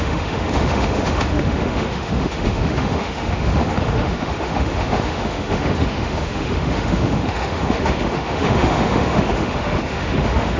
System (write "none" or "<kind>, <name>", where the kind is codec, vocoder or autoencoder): autoencoder, DAC-VAE